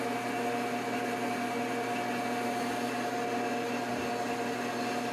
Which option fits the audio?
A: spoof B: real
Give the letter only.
B